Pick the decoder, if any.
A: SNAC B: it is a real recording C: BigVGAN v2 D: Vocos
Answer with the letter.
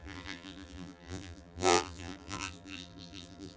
C